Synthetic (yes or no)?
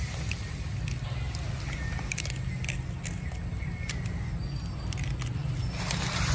no